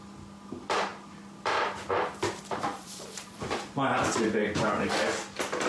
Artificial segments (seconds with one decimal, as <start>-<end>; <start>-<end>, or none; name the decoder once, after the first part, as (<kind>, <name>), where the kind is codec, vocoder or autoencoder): 2.7-3.4 (vocoder, Vocos)